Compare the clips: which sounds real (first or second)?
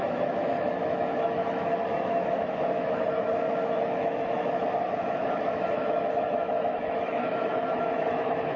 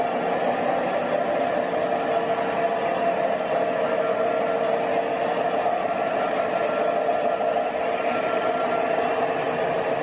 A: second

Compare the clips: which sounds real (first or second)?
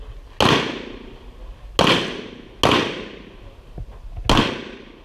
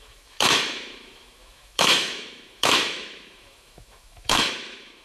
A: first